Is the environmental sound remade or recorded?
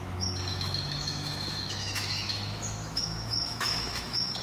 remade